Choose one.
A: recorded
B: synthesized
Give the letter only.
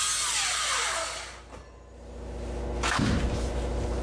A